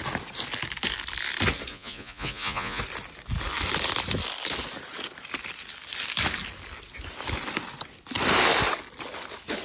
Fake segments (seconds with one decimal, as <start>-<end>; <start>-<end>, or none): 1.7-2.8